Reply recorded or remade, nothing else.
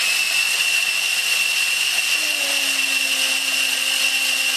recorded